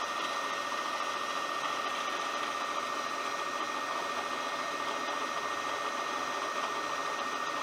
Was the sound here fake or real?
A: fake